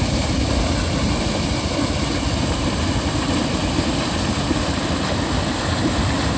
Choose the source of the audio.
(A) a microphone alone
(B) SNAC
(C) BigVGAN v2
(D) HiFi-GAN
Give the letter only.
A